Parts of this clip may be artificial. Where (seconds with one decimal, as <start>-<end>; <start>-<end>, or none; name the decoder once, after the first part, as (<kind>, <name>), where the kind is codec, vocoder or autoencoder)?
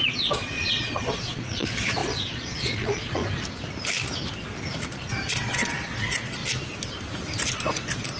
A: 0.0-3.2 (vocoder, Vocos); 5.3-6.4; 7.7-8.2